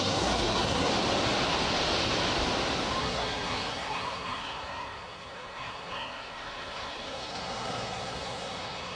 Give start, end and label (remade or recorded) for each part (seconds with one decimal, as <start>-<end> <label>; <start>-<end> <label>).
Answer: 0.0-0.9 remade; 0.9-3.0 recorded; 3.0-9.0 remade